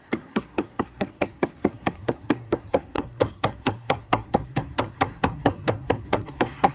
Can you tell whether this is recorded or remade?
remade